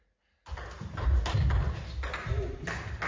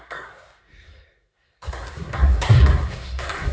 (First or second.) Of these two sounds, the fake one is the second